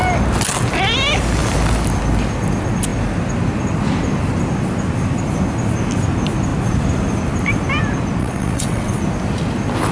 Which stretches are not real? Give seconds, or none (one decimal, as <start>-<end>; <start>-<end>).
8.2-9.0